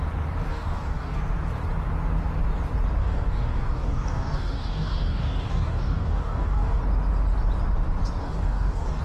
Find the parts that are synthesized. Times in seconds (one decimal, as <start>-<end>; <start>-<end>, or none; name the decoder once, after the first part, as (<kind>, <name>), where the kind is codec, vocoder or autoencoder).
0.5-1.2 (codec, DAC); 3.0-6.8; 8.2-9.0